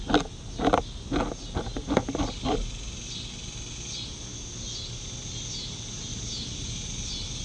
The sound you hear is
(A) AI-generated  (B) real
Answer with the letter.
B